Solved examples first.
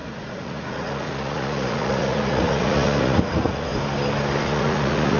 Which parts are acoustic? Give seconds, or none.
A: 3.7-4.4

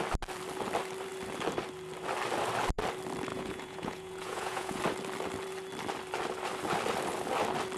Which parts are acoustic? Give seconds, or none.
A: 0.0-3.3; 4.8-7.8

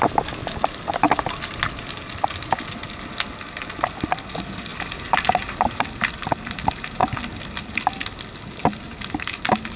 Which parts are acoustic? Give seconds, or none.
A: 0.0-0.4; 2.1-9.8